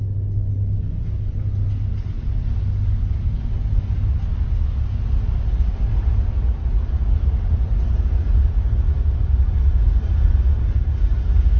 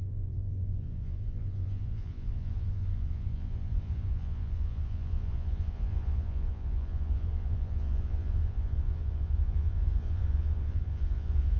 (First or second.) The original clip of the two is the first